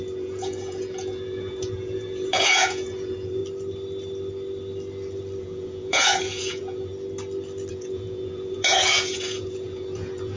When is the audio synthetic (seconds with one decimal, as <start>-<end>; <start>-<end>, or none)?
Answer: 0.0-3.4; 5.4-6.9; 7.7-10.4